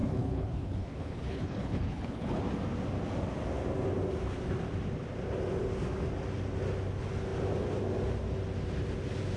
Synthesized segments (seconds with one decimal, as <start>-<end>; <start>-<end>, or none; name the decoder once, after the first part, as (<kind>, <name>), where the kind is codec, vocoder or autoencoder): 0.0-2.4 (codec, HILCodec)